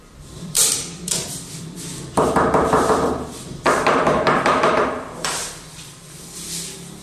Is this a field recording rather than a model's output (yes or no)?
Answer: no